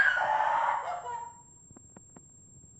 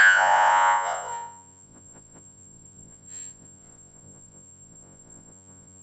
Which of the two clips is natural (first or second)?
first